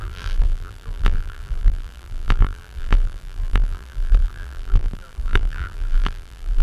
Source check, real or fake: fake